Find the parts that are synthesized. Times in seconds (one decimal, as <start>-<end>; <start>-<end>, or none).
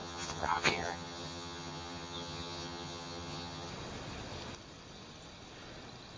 0.0-3.7